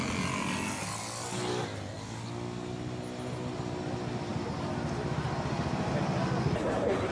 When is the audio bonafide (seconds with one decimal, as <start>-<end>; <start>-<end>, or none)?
0.0-4.3; 6.0-7.1